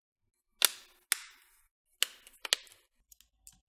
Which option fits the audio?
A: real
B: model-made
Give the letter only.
A